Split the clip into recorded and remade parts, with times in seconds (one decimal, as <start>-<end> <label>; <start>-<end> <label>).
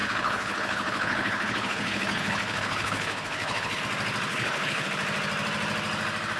0.0-3.8 remade; 3.8-4.3 recorded; 4.3-4.9 remade; 4.9-6.4 recorded